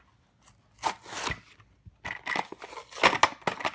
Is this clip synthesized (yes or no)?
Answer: no